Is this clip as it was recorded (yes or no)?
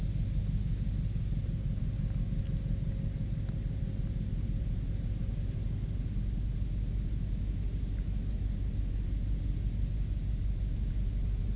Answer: yes